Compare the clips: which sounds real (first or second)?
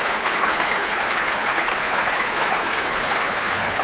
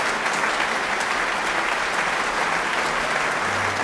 second